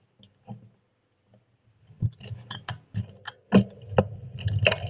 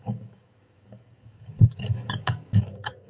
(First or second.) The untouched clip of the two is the first